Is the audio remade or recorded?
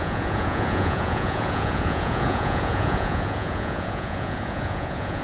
remade